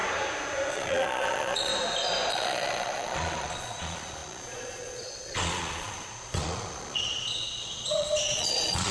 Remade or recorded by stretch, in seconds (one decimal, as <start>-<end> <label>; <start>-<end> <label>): 0.0-0.7 recorded; 0.7-1.7 remade; 1.7-2.3 recorded; 2.3-8.9 remade